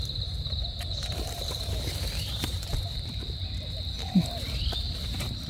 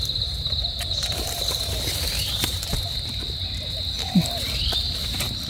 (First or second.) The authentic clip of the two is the second